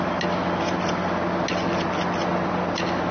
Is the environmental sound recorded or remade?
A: recorded